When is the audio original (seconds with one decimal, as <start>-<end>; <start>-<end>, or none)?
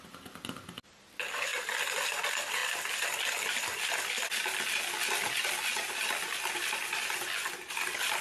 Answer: 0.0-8.2